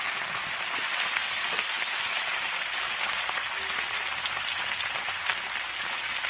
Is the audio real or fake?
real